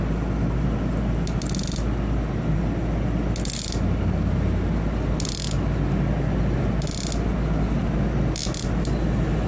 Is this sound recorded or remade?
recorded